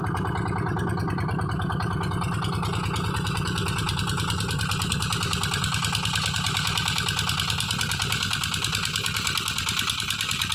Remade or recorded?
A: recorded